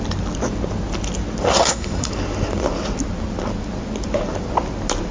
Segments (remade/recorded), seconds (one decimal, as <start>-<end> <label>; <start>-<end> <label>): 0.0-1.5 recorded; 1.5-2.1 remade; 2.1-5.1 recorded